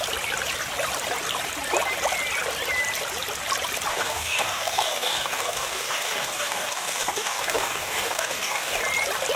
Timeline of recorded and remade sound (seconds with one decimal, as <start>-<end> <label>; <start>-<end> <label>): 0.0-3.9 recorded; 3.9-8.8 remade; 8.8-9.4 recorded